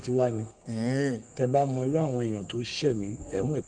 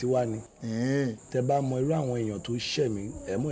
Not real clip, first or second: first